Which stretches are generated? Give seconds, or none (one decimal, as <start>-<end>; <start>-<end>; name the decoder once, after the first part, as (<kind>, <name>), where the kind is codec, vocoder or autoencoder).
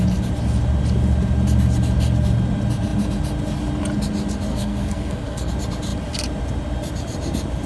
4.5-5.5 (codec, SNAC)